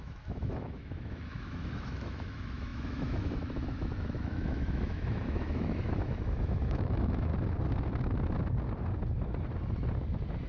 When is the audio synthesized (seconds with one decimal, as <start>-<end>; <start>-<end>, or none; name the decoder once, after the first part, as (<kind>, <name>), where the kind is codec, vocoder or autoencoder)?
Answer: 0.0-7.3 (autoencoder, DAC-VAE)